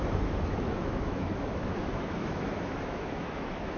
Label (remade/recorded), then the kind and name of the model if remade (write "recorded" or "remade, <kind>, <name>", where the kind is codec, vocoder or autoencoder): remade, autoencoder, DAC-VAE